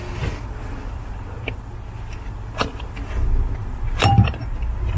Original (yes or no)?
yes